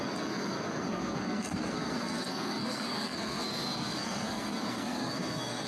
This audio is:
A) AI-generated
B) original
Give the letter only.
A